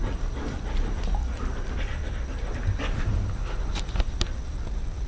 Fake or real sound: real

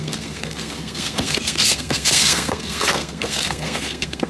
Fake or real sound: fake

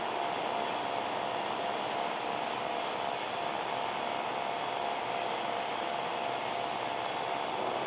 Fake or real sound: real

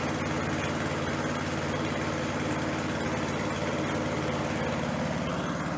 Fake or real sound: real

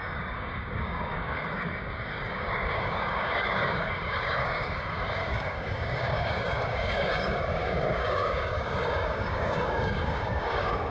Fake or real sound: fake